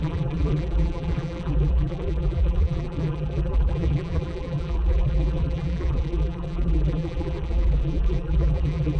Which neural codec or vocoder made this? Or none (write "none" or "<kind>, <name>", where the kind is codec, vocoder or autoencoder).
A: vocoder, BigVGAN v2